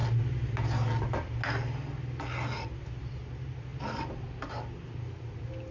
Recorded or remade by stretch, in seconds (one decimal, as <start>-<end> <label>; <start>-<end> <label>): 0.0-5.7 recorded